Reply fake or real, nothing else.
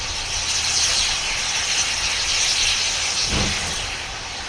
real